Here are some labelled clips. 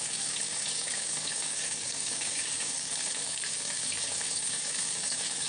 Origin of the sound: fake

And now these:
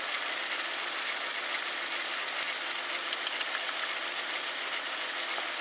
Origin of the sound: real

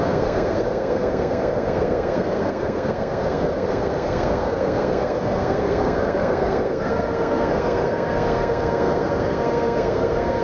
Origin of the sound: fake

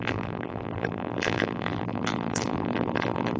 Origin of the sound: fake